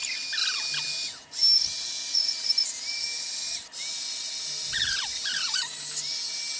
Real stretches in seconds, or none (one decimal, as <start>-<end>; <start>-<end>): 0.0-6.6

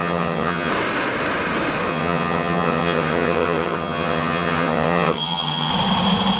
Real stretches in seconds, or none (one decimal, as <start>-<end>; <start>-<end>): 0.7-1.9; 5.7-6.4

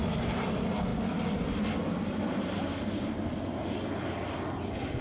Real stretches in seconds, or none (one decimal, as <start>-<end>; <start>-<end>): 0.0-5.0

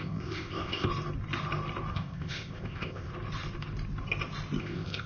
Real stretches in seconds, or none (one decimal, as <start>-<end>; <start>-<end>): 0.9-1.9; 3.1-4.6

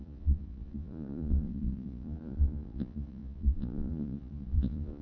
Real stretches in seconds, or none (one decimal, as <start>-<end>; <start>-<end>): none

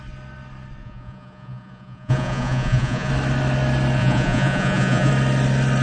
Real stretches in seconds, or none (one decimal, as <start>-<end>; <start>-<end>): 0.0-0.8; 3.1-4.0; 5.1-5.8

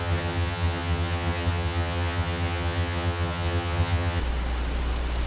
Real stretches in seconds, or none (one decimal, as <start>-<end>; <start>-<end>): 4.2-5.3